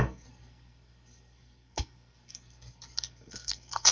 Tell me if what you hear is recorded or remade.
remade